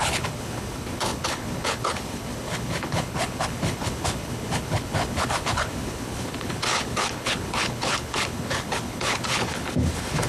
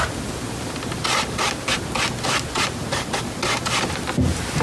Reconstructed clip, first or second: first